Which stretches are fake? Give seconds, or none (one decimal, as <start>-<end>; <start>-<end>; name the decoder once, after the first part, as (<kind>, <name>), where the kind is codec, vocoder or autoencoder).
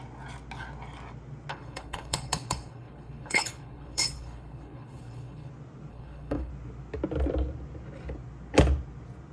1.5-5.5 (codec, HILCodec); 5.9-6.5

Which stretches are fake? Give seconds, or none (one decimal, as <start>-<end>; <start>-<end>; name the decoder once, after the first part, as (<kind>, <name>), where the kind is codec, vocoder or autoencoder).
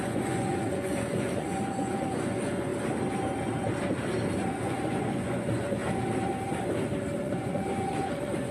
0.0-2.7 (vocoder, Vocos); 4.5-5.8; 7.2-8.5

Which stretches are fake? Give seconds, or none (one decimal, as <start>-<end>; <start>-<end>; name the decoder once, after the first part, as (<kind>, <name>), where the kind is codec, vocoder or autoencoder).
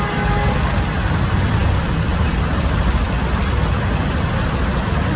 none